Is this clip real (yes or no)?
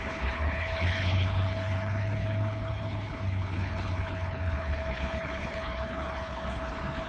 no